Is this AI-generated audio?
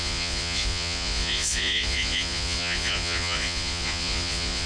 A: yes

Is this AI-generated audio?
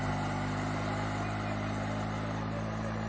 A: no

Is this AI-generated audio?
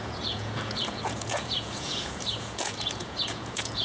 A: yes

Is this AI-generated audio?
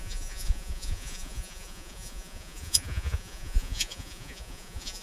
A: yes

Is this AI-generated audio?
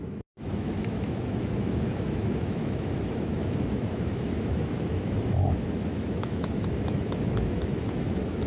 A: yes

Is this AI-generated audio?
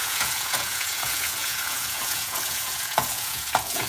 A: yes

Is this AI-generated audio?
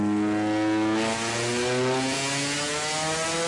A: no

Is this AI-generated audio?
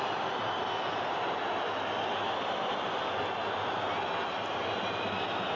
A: no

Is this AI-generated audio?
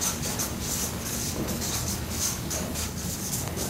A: yes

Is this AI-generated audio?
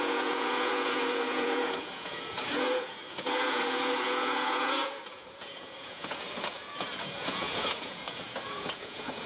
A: yes